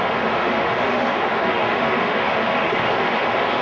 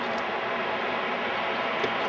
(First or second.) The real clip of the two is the second